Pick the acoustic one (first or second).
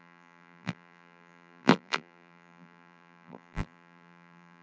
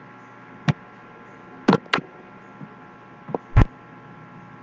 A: second